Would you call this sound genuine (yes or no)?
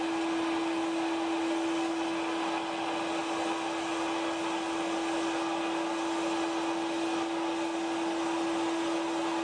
yes